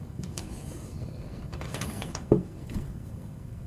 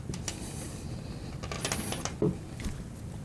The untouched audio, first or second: second